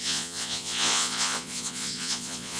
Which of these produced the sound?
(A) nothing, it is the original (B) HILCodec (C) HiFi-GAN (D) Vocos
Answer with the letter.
D